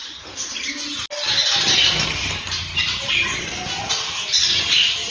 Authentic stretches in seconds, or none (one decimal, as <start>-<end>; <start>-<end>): 0.0-5.1

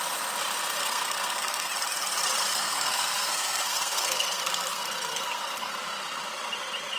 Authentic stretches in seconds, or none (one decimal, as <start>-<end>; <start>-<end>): 0.0-0.8; 1.7-2.5; 5.7-7.0

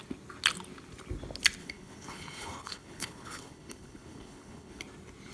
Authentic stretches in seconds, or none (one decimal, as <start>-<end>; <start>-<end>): 0.0-1.6; 4.8-5.3

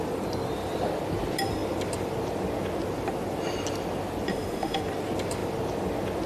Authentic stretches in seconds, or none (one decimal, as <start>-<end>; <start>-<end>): 0.0-4.3; 4.8-6.3

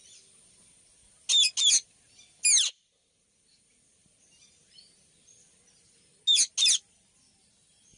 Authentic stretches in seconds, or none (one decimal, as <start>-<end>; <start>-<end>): 0.0-8.0

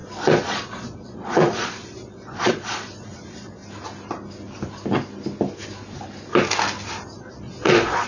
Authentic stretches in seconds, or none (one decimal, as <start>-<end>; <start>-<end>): 3.6-7.3

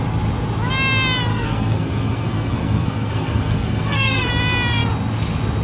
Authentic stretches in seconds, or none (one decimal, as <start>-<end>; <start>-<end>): 0.0-1.3; 4.3-5.6